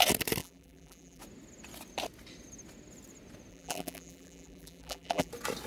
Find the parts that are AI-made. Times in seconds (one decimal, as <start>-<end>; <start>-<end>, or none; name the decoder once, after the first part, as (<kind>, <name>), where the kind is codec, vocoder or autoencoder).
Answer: 0.4-1.2 (vocoder, BigVGAN v2); 3.5-5.3